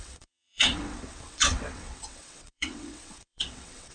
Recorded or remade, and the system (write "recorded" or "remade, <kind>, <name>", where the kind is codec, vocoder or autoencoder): remade, vocoder, WaveNeXt